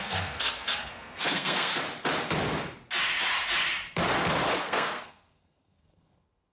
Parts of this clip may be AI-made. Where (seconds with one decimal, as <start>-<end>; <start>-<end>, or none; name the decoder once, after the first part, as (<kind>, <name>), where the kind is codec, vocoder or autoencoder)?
0.0-1.7 (codec, SNAC); 4.6-6.5